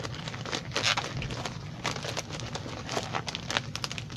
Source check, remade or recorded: recorded